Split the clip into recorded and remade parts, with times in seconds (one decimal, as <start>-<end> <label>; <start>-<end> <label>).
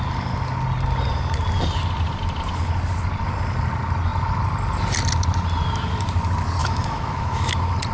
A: 0.0-6.6 recorded; 6.6-7.5 remade; 7.5-7.9 recorded